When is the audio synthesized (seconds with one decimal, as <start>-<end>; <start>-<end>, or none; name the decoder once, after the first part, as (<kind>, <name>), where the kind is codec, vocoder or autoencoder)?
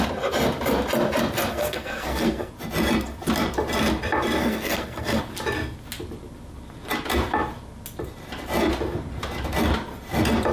1.5-2.5 (codec, SNAC); 4.4-5.2